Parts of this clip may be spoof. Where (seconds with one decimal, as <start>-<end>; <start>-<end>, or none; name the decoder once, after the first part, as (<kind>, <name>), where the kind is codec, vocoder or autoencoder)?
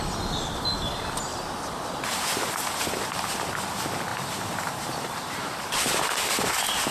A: 1.3-3.2 (vocoder, BigVGAN v2); 4.1-6.5